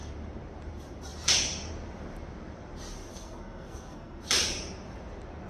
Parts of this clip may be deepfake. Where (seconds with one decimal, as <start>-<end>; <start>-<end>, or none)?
3.1-4.2